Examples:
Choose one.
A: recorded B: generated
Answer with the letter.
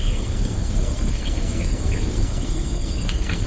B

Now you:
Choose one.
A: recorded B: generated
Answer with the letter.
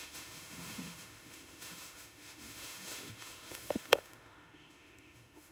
B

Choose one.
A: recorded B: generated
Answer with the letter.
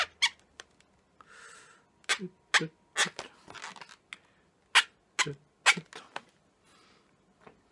A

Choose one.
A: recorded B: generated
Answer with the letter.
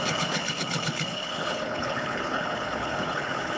B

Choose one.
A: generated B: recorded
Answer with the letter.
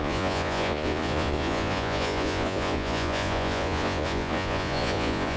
A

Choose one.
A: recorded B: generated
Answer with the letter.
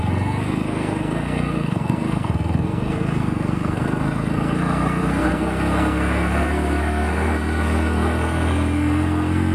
B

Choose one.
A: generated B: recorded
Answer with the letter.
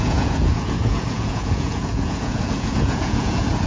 A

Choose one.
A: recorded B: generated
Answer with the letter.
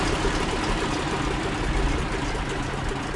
A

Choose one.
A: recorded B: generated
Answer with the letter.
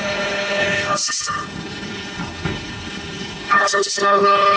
B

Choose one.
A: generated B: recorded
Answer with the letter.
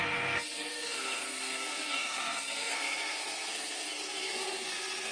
A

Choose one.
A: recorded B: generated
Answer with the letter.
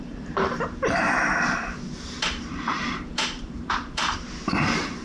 B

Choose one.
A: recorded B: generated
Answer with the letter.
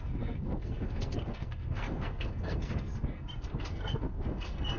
B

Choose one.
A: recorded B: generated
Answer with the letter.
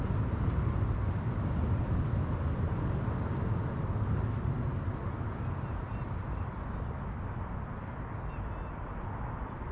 A